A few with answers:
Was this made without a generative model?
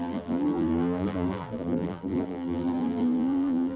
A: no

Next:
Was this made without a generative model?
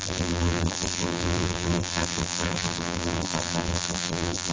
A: no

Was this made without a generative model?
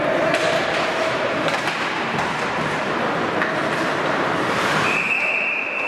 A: no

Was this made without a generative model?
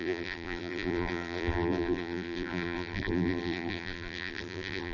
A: no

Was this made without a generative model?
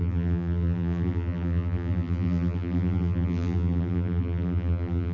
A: no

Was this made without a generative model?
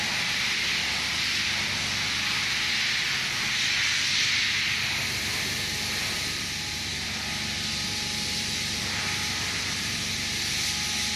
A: yes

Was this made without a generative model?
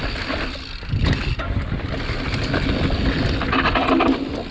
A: yes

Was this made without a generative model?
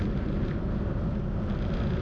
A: yes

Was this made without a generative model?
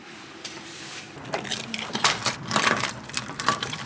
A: no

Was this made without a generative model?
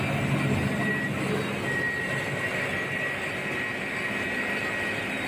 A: yes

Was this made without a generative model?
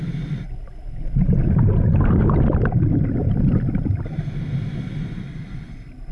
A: yes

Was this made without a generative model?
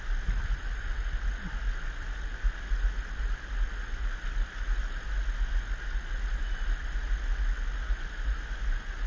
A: yes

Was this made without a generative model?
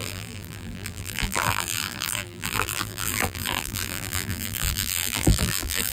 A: no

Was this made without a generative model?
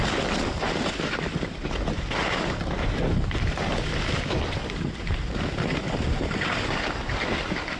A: yes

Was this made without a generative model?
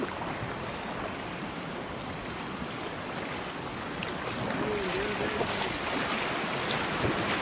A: yes